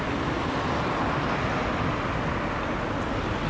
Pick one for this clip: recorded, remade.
recorded